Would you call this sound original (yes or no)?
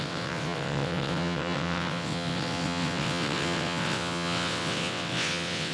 no